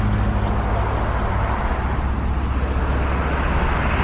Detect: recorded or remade recorded